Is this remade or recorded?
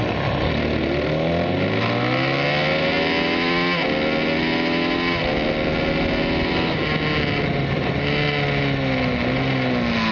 recorded